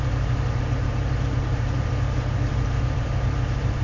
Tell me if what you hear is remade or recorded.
remade